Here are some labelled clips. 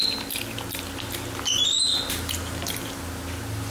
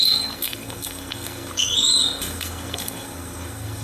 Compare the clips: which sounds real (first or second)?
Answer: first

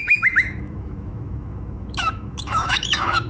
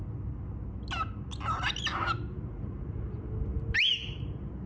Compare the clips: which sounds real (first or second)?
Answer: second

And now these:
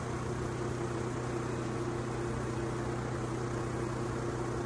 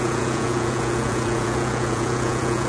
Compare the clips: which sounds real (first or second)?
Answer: first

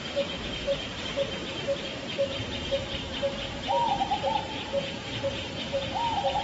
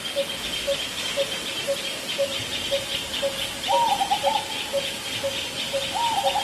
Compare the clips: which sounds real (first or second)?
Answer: second